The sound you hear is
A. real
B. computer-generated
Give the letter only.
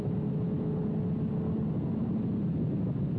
A